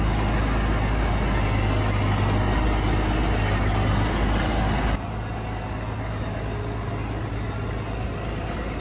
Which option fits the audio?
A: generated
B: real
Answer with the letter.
B